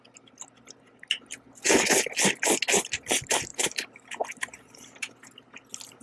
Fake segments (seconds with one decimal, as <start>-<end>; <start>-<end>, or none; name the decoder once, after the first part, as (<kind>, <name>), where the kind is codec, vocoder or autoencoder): 3.5-5.1 (vocoder, BigVGAN v2)